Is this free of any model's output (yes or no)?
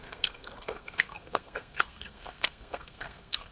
no